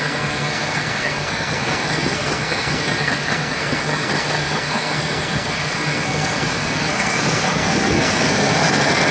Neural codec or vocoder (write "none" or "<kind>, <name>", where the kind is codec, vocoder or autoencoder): codec, SNAC